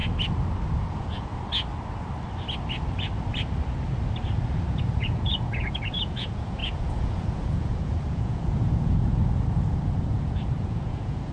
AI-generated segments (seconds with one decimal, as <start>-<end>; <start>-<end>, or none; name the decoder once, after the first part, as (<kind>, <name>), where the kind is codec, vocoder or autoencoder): 0.8-1.3 (vocoder, Vocos); 4.7-11.3